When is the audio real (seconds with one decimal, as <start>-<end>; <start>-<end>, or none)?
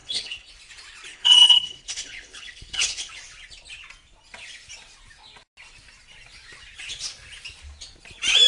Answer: 0.5-1.1; 3.1-8.5